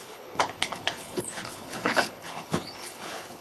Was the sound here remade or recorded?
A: remade